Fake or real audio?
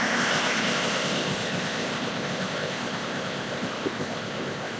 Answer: fake